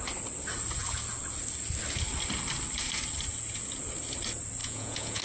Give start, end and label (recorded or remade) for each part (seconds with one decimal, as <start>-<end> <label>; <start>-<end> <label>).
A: 0.0-4.6 recorded; 4.6-5.2 remade